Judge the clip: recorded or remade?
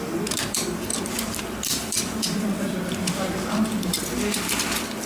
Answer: remade